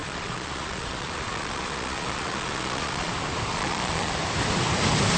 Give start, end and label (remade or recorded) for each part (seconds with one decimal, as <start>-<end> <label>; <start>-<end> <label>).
0.0-3.1 remade; 3.1-3.5 recorded; 3.5-4.1 remade; 4.1-5.2 recorded